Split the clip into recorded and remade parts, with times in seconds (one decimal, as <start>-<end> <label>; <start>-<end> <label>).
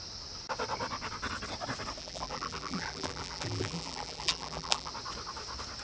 0.0-2.0 recorded; 2.0-4.9 remade; 4.9-5.8 recorded